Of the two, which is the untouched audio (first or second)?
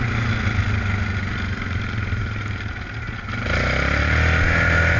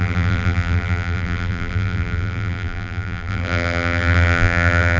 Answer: first